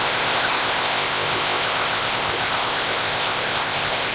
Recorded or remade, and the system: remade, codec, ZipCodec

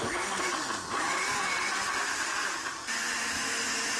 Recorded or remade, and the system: recorded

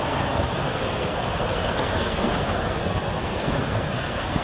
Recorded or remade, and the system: remade, codec, SNAC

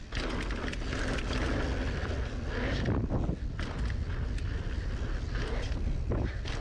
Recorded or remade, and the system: recorded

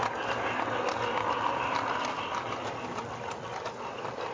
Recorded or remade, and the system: recorded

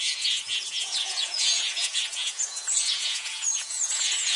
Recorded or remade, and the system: remade, vocoder, Vocos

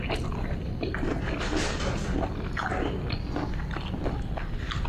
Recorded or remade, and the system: recorded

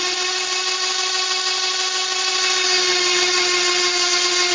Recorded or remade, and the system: recorded